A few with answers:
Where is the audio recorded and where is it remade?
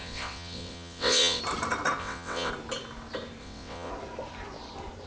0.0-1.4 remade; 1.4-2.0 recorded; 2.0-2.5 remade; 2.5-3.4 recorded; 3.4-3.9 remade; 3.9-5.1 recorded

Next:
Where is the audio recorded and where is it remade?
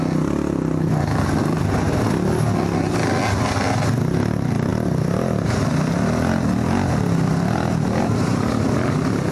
0.0-9.3 recorded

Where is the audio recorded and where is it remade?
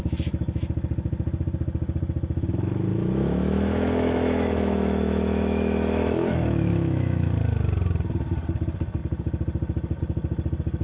0.0-2.9 recorded; 2.9-7.3 remade; 7.3-10.8 recorded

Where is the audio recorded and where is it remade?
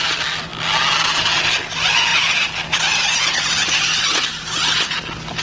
0.0-5.4 recorded